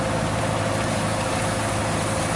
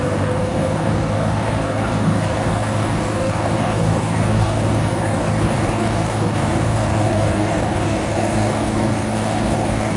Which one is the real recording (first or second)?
first